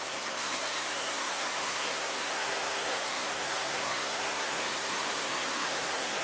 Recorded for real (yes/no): no